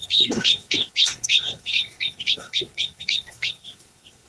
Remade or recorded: remade